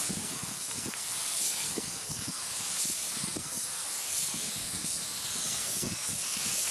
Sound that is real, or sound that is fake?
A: fake